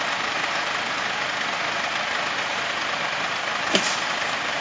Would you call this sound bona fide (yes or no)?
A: yes